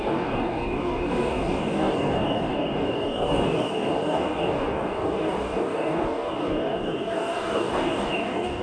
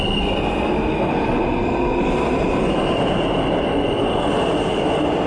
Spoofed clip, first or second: first